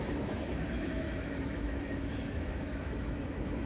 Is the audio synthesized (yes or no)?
yes